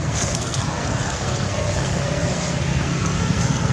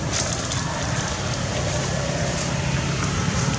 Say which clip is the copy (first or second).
first